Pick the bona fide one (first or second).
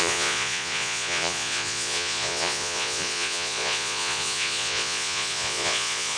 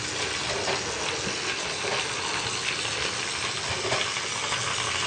second